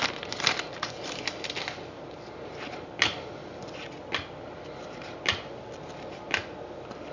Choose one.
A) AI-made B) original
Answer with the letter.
B